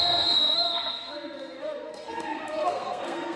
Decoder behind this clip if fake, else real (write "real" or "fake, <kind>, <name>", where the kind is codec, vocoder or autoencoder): fake, codec, SNAC